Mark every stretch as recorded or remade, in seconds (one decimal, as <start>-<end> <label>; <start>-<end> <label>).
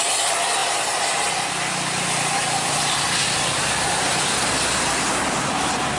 0.0-6.0 recorded